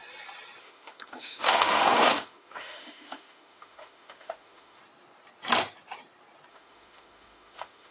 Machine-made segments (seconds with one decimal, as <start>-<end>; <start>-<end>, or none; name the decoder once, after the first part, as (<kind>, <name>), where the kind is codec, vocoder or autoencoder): 0.6-4.8 (autoencoder, DAC-VAE); 6.5-7.9